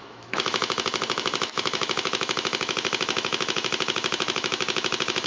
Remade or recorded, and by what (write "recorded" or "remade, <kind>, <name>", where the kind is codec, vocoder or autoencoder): remade, autoencoder, DAC-VAE